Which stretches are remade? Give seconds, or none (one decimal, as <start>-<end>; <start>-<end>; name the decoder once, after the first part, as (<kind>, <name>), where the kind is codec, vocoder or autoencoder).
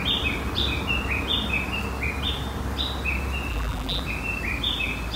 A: 3.5-4.0 (vocoder, BigVGAN v2)